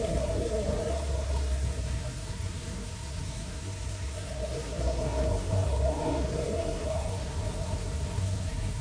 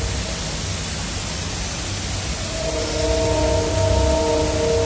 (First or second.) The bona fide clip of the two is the second